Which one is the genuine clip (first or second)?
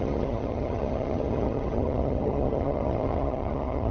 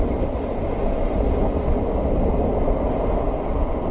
second